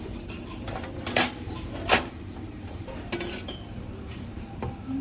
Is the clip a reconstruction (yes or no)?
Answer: yes